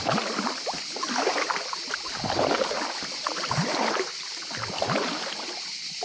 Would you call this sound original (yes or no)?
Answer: yes